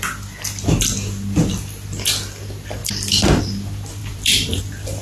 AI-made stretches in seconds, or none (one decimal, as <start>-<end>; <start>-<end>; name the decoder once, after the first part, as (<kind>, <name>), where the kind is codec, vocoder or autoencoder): 2.8-3.4 (vocoder, BigVGAN v2); 4.0-4.6